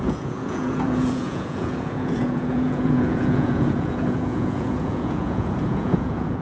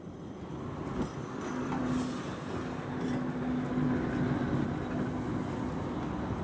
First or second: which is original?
second